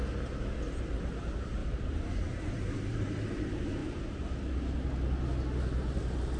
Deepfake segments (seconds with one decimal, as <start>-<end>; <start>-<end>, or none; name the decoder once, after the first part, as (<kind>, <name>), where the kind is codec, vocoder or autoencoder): 1.6-3.3 (vocoder, BigVGAN v2)